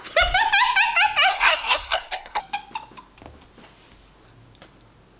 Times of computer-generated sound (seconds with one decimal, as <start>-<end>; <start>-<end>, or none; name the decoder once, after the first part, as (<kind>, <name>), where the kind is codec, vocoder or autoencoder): 1.3-2.4 (codec, SNAC)